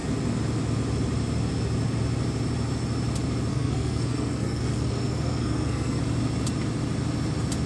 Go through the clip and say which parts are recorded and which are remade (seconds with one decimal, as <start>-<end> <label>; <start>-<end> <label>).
0.0-3.5 recorded; 3.5-6.0 remade; 6.0-7.7 recorded